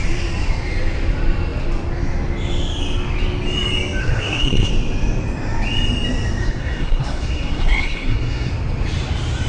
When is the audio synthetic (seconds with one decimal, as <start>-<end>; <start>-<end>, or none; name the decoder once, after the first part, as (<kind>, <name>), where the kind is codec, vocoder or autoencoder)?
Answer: 4.0-4.7 (codec, SNAC); 6.4-8.5